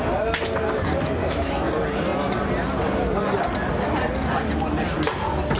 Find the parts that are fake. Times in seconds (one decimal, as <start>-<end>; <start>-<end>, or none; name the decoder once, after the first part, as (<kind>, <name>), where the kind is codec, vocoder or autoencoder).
1.2-1.7 (autoencoder, DAC-VAE)